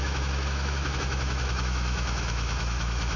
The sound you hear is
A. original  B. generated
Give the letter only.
B